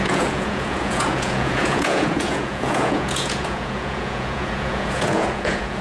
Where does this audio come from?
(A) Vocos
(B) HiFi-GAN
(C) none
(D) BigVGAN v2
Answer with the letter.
A